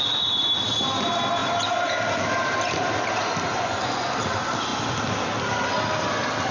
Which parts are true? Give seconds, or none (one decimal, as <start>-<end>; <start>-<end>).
0.0-3.5; 4.1-6.5